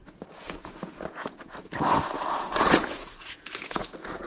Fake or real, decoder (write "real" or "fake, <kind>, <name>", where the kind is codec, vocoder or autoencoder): fake, vocoder, Vocos